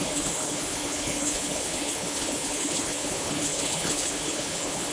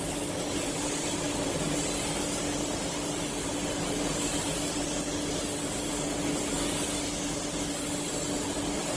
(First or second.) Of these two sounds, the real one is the second